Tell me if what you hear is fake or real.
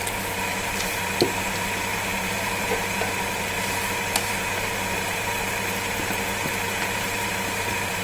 fake